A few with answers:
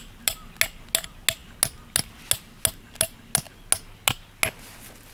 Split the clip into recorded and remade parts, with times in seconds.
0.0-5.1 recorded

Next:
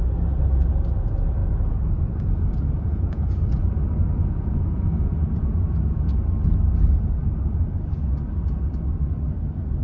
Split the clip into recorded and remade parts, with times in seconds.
0.0-1.4 recorded; 1.4-3.6 remade; 3.6-4.2 recorded; 4.2-6.1 remade; 6.1-9.8 recorded